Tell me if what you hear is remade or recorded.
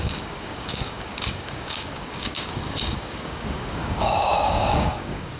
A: remade